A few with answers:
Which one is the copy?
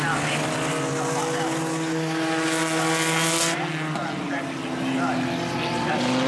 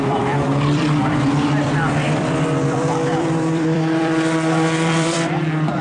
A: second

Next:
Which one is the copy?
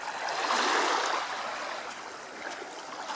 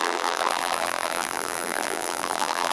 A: second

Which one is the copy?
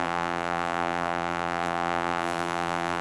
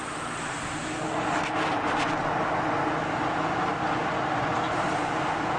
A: first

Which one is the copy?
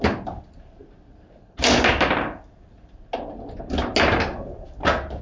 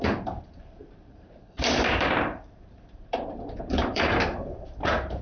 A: second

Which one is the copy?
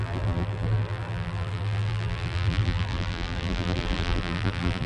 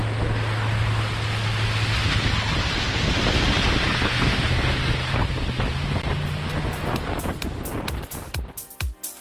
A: first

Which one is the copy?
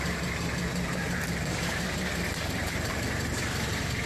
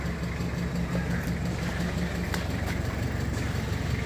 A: first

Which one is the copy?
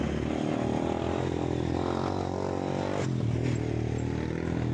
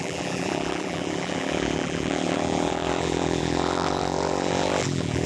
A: second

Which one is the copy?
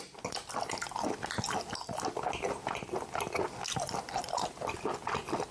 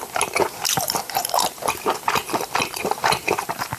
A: second